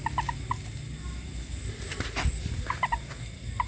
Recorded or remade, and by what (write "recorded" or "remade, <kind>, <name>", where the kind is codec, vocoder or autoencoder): recorded